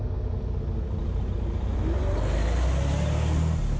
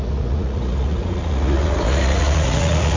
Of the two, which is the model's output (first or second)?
second